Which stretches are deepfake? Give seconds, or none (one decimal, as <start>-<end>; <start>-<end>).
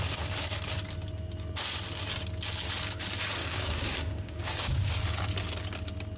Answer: 3.4-5.0